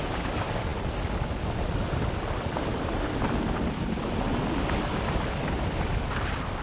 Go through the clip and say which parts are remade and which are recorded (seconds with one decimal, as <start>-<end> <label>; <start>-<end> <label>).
0.0-6.6 recorded

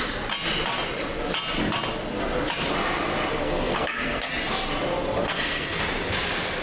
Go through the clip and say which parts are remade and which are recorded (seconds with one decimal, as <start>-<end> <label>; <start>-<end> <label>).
0.0-3.4 recorded; 3.4-4.3 remade; 4.3-5.2 recorded; 5.2-5.8 remade; 5.8-6.6 recorded